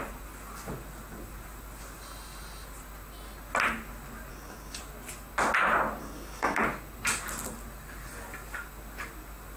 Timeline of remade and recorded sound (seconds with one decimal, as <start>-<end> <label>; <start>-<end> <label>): 0.0-4.3 recorded; 4.3-4.8 remade; 4.8-6.0 recorded; 6.0-6.6 remade; 6.6-9.6 recorded